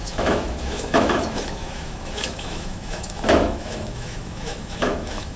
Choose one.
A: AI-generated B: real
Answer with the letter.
A